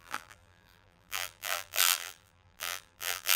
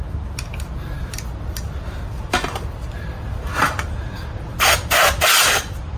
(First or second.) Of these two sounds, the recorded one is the second